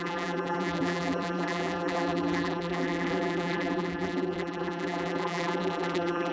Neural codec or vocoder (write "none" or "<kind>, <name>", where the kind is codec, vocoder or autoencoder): vocoder, BigVGAN v2